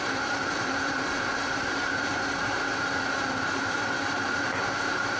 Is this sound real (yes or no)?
no